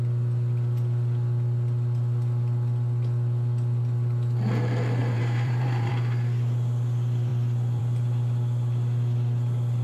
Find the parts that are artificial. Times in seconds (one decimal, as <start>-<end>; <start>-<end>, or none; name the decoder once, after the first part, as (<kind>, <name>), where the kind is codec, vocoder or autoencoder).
5.0-5.9 (vocoder, BigVGAN v2)